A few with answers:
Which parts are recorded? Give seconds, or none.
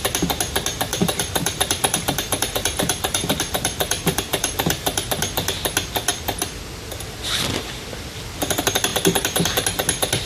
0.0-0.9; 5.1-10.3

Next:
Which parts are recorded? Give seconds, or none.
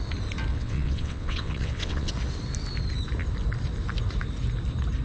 0.0-0.5; 2.1-5.0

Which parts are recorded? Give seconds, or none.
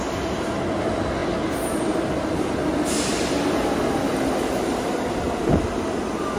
0.0-6.4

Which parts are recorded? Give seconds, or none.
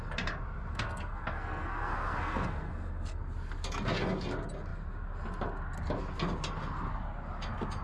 0.0-0.7; 3.2-7.8